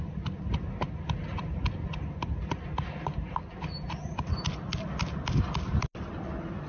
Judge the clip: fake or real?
real